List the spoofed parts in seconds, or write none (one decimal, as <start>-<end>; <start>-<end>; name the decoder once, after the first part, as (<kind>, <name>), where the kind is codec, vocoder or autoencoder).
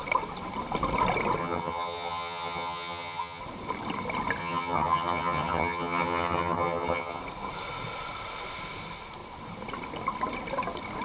1.4-3.4 (vocoder, HiFi-GAN); 4.4-7.2